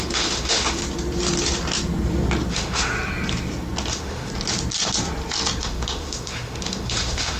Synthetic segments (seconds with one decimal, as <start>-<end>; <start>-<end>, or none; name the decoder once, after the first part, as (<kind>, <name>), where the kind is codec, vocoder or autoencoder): 0.0-0.8 (autoencoder, DAC-VAE); 2.5-2.9; 3.9-4.3; 5.6-7.4